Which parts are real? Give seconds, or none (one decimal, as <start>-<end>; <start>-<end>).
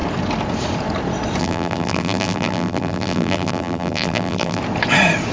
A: 0.0-1.4; 4.6-5.3